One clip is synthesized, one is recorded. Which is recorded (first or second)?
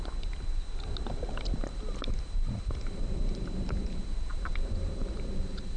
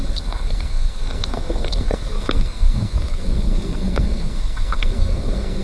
first